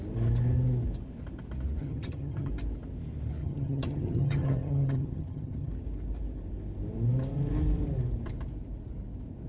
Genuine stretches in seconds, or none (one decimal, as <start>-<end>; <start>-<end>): 0.0-1.8; 2.5-3.4; 5.7-9.5